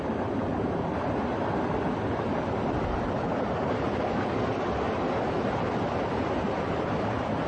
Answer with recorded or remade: recorded